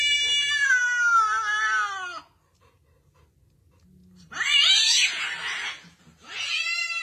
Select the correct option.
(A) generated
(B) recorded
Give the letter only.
B